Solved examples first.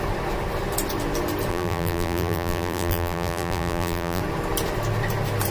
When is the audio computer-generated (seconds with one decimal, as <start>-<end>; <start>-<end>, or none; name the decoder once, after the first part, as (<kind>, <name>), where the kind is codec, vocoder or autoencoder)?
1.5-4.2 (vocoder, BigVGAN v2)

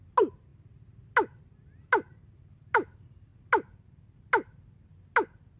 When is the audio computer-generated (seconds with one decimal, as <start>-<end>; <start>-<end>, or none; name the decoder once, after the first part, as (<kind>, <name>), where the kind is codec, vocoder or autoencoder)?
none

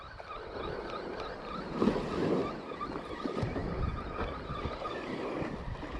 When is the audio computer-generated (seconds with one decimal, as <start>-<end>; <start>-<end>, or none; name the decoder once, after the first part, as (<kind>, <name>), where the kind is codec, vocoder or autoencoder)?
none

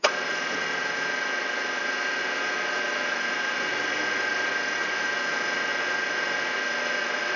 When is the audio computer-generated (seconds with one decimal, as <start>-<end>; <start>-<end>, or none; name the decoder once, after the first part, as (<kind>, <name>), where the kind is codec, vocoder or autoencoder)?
none

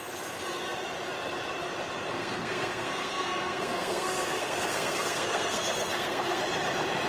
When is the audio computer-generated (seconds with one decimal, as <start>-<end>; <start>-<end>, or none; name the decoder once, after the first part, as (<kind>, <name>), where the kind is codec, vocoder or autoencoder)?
2.1-6.4 (codec, SNAC)

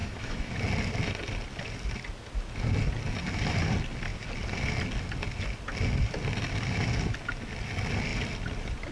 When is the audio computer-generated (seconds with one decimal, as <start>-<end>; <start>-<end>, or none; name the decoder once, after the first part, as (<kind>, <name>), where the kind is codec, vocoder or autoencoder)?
0.0-0.5 (autoencoder, DAC-VAE)

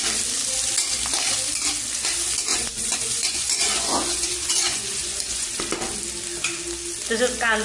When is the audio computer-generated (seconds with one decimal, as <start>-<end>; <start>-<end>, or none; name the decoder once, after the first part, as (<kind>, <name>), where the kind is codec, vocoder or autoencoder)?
2.5-5.6 (vocoder, Vocos)

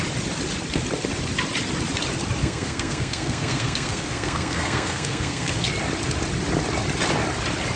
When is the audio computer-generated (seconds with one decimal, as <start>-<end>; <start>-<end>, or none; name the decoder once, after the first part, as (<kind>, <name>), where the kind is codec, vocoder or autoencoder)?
2.4-5.7 (codec, SNAC)